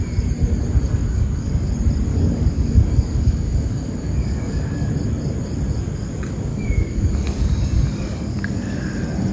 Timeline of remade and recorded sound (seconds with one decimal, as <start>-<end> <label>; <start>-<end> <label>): 0.0-1.0 recorded; 1.0-1.7 remade; 1.7-2.1 recorded; 2.1-4.9 remade; 4.9-6.5 recorded; 6.5-8.8 remade; 8.8-9.3 recorded